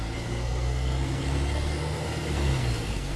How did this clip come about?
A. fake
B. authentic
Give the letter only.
A